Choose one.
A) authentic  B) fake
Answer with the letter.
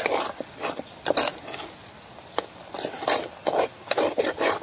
A